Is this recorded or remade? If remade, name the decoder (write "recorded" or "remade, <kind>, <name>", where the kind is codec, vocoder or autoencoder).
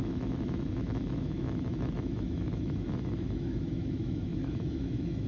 remade, autoencoder, DAC-VAE